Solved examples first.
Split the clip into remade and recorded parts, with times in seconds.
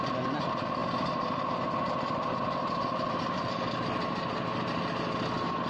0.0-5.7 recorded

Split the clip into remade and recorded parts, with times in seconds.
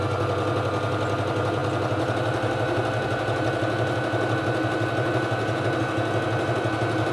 0.0-7.1 recorded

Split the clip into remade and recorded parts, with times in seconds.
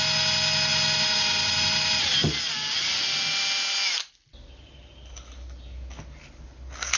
0.0-7.0 recorded